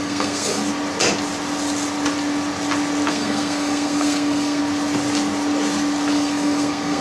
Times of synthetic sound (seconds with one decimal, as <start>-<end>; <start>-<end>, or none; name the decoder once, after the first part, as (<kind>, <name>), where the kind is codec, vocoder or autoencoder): 0.0-0.6 (codec, SNAC); 3.1-4.6; 6.1-7.0